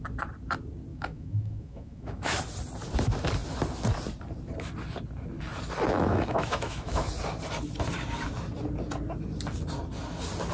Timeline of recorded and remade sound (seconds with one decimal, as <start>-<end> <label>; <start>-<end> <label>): 0.0-0.9 recorded; 0.9-2.4 remade; 2.4-5.9 recorded; 5.9-7.1 remade; 7.1-10.5 recorded